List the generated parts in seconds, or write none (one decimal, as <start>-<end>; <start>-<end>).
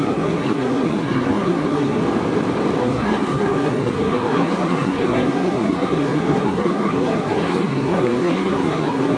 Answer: 0.0-2.0; 2.8-9.2